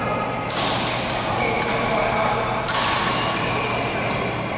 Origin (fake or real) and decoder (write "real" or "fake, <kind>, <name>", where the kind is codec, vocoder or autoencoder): real